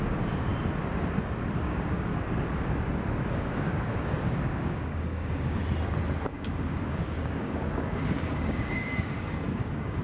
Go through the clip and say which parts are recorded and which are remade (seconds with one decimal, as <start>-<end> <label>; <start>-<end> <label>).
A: 0.0-0.5 remade; 0.5-1.6 recorded; 1.6-2.1 remade; 2.1-3.3 recorded; 3.3-5.6 remade; 5.6-6.3 recorded; 6.3-10.0 remade